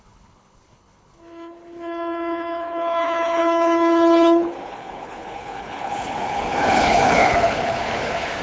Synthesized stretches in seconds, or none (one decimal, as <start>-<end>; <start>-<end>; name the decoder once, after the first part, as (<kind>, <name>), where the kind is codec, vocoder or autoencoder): 0.0-8.4 (codec, HILCodec)

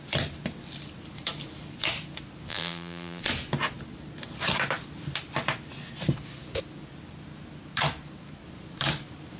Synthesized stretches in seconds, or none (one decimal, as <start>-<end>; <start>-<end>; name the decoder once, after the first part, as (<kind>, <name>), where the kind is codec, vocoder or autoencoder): 2.5-3.2 (vocoder, BigVGAN v2)